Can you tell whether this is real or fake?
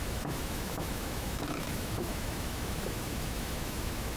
fake